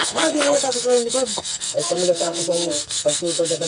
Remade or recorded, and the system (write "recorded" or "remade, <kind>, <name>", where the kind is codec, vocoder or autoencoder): remade, codec, SNAC